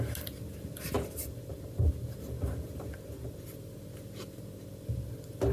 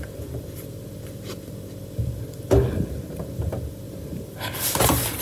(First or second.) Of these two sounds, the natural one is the first